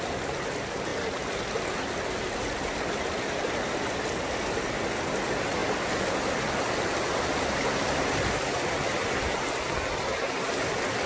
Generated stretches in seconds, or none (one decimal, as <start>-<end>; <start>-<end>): none